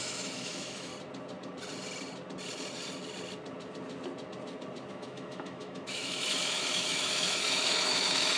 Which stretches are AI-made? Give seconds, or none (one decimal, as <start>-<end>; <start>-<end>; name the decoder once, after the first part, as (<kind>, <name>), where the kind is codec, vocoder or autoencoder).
0.0-0.9 (autoencoder, DAC-VAE); 4.9-8.4